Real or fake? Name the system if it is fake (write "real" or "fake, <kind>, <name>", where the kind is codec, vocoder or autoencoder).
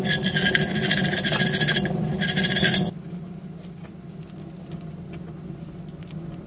real